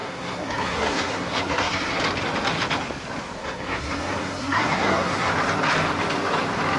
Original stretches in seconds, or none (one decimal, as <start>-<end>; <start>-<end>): 2.0-3.4; 5.3-6.8